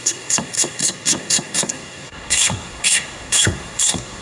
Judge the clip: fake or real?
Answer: fake